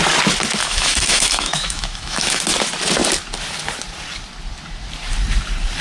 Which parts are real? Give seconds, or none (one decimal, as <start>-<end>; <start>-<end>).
0.0-0.6; 2.4-5.8